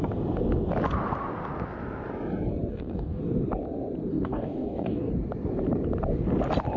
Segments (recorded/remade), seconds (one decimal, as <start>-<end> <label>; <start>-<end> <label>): 0.0-2.7 recorded; 2.7-3.2 remade; 3.2-4.1 recorded; 4.1-5.1 remade; 5.1-6.8 recorded